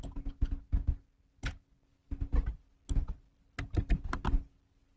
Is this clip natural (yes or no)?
yes